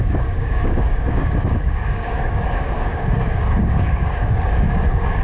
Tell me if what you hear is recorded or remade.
remade